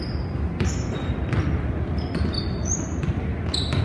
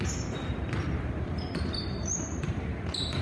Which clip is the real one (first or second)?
first